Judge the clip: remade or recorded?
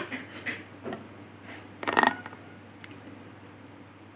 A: recorded